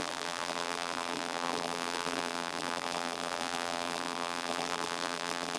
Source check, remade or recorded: remade